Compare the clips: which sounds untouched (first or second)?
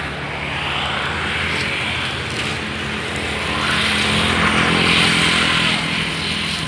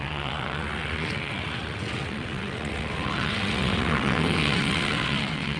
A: first